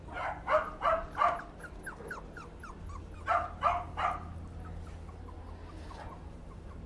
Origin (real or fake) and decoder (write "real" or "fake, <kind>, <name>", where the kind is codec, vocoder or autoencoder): real